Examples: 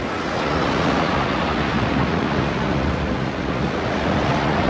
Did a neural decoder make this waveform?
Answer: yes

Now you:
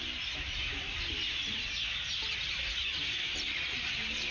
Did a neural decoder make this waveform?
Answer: no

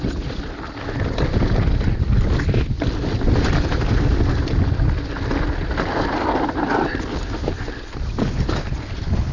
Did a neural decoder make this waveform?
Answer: no